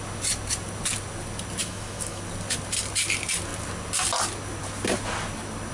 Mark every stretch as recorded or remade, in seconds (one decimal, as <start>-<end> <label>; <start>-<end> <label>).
0.0-1.6 recorded; 1.6-2.2 remade; 2.2-5.7 recorded

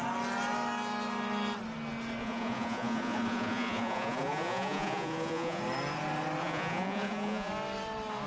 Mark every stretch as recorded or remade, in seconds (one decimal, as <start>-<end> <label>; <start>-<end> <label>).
0.0-2.2 recorded; 2.2-5.6 remade; 5.6-6.4 recorded; 6.4-7.5 remade; 7.5-8.3 recorded

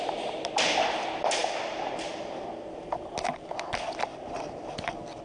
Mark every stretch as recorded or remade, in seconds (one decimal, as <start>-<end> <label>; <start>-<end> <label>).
0.0-5.2 recorded

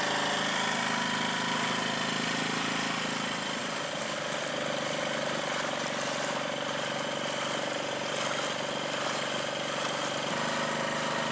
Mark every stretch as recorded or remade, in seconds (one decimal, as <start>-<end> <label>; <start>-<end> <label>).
0.0-11.3 recorded

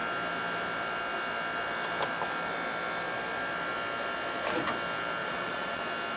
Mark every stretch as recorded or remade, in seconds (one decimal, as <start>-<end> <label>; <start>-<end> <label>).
0.0-5.2 recorded; 5.2-5.8 remade; 5.8-6.2 recorded

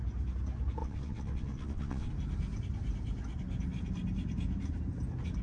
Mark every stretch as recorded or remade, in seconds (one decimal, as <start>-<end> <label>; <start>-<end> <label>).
0.0-0.8 recorded; 0.8-2.1 remade; 2.1-5.4 recorded

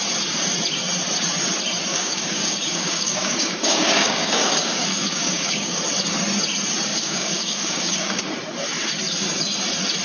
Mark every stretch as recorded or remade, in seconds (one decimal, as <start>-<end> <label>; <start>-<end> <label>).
0.0-1.9 recorded; 1.9-5.8 remade; 5.8-6.9 recorded; 6.9-8.2 remade; 8.2-10.0 recorded